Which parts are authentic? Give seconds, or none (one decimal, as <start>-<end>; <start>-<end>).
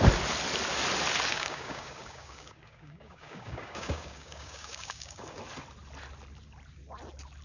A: 0.0-1.3; 5.4-7.4